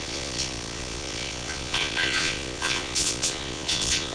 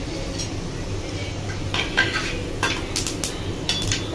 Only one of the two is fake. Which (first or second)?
first